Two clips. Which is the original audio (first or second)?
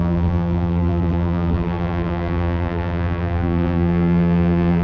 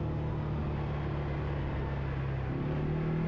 second